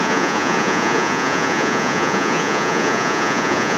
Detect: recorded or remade remade